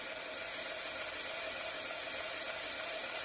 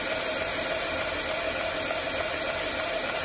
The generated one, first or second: second